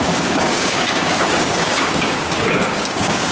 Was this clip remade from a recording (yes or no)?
yes